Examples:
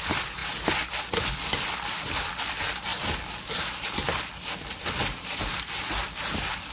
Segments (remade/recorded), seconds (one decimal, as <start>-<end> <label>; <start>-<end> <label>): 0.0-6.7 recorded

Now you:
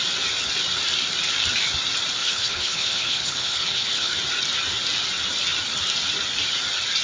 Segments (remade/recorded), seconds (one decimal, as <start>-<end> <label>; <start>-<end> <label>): 0.0-2.2 recorded; 2.2-4.2 remade; 4.2-7.0 recorded

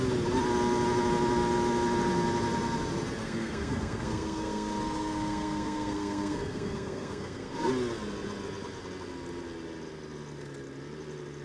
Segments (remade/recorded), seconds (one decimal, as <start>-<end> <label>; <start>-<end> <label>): 0.0-3.2 recorded; 3.2-7.7 remade; 7.7-11.4 recorded